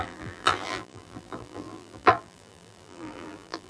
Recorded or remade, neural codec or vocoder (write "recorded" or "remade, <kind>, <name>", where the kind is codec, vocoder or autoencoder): remade, vocoder, BigVGAN v2